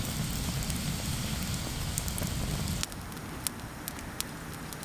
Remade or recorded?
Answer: recorded